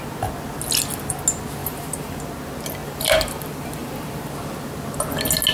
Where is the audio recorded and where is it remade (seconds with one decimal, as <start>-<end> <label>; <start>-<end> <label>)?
0.0-1.6 recorded; 1.6-2.2 remade; 2.2-2.8 recorded; 2.8-4.3 remade; 4.3-5.5 recorded